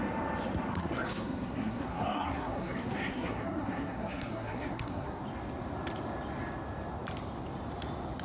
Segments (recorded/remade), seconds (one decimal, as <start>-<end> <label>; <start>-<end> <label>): 0.0-0.7 recorded; 0.7-5.2 remade; 5.2-8.2 recorded